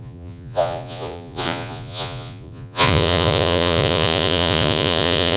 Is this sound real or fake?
fake